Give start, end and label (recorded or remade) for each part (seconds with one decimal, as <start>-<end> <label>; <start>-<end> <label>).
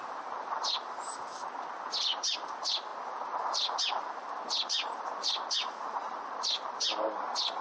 0.0-1.4 remade; 1.4-2.0 recorded; 2.0-7.6 remade